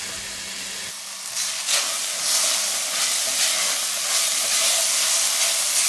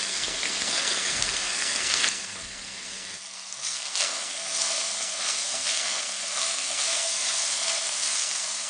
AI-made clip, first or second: second